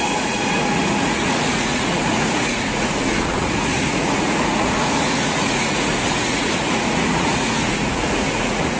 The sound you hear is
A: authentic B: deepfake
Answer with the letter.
B